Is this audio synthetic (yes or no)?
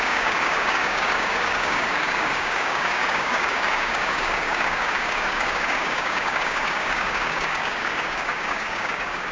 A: yes